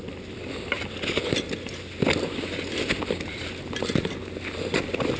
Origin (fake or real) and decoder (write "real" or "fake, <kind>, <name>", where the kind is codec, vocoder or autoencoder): real